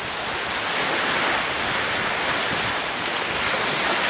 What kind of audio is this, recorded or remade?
recorded